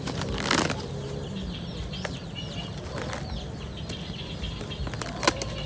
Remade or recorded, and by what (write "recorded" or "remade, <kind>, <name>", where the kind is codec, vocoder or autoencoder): recorded